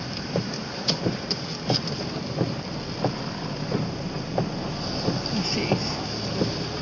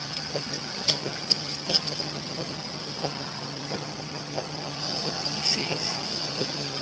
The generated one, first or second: second